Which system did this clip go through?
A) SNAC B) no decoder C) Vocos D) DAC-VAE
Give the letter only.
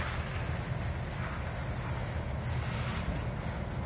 B